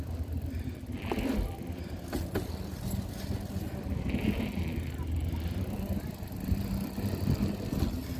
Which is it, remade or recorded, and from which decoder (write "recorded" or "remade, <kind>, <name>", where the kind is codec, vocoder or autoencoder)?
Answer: recorded